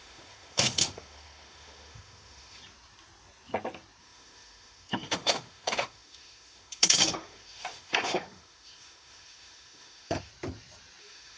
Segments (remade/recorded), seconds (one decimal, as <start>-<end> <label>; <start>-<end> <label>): 0.0-2.6 remade; 2.6-4.0 recorded; 4.0-10.3 remade; 10.3-11.0 recorded; 11.0-11.4 remade